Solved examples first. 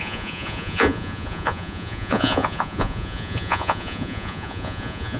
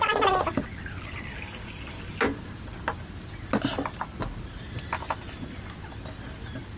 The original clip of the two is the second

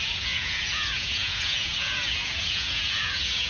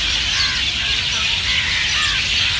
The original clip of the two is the second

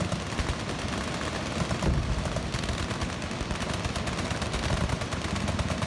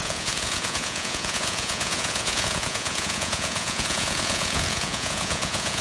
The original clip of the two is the first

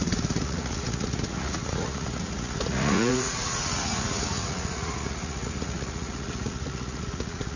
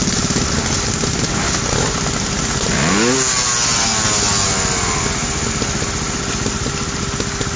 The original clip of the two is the second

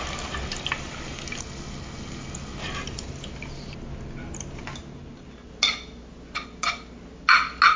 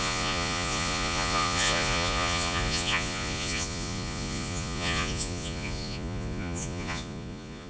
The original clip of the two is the first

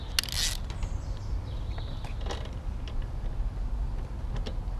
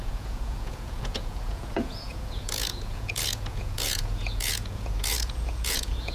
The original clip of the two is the first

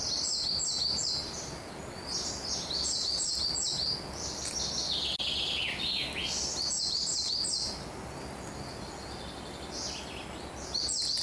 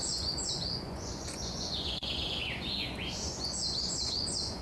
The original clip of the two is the first